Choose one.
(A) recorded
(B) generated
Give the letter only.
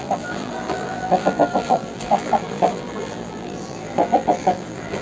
B